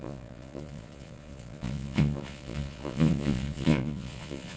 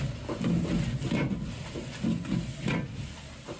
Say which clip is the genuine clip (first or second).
second